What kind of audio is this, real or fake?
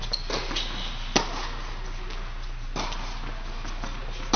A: real